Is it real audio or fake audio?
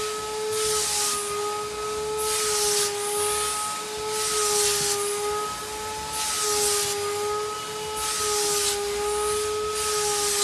real